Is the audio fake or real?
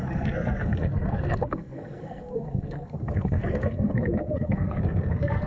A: fake